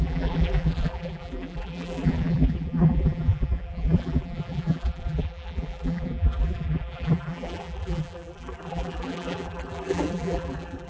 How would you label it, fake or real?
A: fake